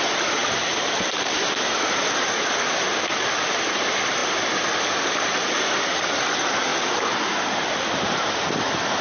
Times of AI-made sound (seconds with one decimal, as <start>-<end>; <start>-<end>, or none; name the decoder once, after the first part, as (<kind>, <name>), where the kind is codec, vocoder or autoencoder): 0.0-4.2 (vocoder, BigVGAN v2); 5.6-6.7; 7.6-9.0